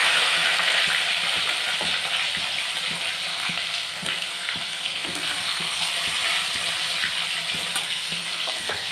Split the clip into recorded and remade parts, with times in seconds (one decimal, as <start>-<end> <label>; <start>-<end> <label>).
0.0-0.8 remade; 0.8-3.3 recorded; 3.3-5.9 remade; 5.9-7.8 recorded; 7.8-8.9 remade

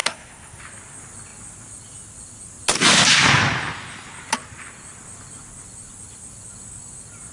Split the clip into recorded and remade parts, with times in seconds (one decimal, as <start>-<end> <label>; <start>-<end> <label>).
0.0-0.6 remade; 0.6-7.3 recorded